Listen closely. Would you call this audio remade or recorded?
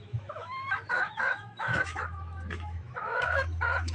remade